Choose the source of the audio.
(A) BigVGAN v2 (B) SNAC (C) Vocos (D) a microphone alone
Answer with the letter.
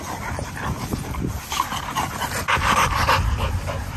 D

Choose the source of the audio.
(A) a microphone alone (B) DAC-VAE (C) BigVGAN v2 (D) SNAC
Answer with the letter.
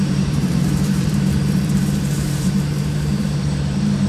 C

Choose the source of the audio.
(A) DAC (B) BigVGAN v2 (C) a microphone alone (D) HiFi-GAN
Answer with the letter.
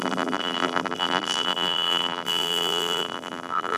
B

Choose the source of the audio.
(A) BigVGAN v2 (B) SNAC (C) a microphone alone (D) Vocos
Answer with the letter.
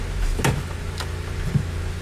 C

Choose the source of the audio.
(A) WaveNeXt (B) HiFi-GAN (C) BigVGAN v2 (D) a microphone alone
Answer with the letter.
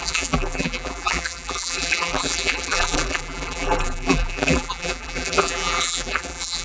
C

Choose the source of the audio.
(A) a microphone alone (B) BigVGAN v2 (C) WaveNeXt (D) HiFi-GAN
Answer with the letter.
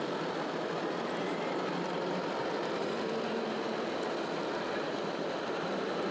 B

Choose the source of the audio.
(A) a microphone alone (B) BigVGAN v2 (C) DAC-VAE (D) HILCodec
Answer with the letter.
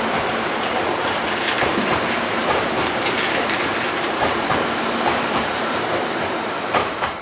B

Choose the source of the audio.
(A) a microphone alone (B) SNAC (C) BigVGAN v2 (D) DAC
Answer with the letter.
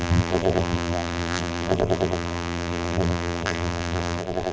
C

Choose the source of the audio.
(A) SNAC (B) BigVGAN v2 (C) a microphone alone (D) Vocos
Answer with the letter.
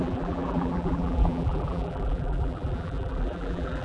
B